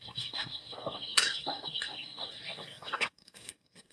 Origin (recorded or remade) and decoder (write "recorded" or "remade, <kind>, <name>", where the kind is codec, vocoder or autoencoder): remade, codec, SNAC